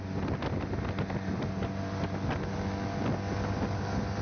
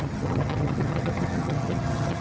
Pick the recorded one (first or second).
first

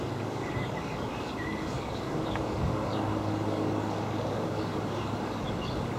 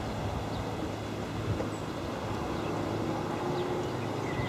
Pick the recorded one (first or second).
second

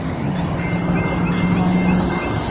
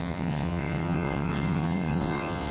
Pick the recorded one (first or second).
first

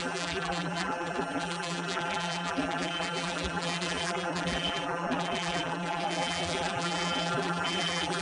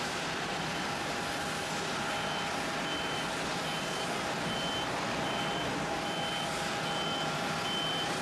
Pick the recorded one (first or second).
second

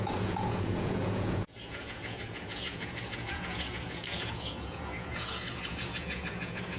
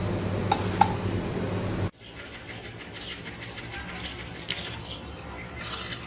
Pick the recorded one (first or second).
second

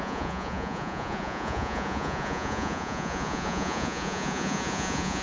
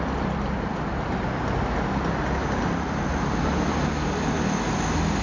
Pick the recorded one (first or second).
second